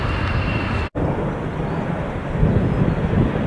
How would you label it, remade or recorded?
recorded